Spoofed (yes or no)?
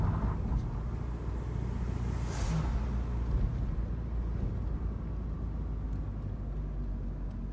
no